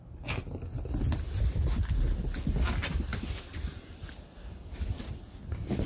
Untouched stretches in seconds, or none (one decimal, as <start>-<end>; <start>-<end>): 0.0-5.9